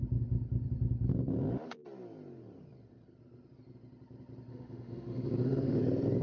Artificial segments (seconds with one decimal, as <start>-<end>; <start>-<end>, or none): 4.5-5.8